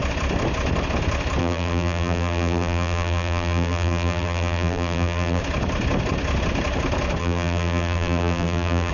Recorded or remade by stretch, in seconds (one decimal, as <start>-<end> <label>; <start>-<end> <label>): 0.0-1.4 recorded; 1.4-5.4 remade; 5.4-7.2 recorded; 7.2-8.9 remade